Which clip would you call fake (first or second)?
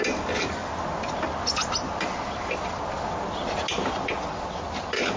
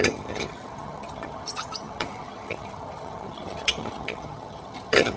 second